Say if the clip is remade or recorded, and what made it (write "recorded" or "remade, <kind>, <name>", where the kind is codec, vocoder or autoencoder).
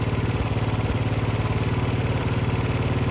recorded